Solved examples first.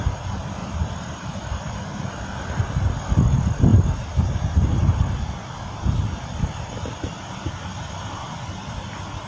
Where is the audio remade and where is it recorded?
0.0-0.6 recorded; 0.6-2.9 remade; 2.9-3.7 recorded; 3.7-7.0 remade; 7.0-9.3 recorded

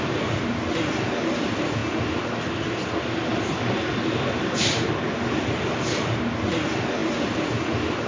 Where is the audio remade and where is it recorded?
0.0-1.8 remade; 1.8-2.5 recorded; 2.5-8.1 remade

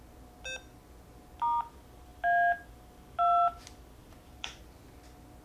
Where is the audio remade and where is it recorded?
0.0-4.0 recorded; 4.0-4.6 remade; 4.6-5.4 recorded

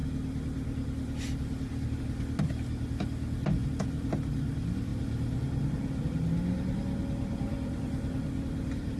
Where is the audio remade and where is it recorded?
0.0-4.9 recorded; 4.9-9.0 remade